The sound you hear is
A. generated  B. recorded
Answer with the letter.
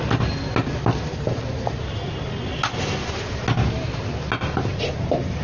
B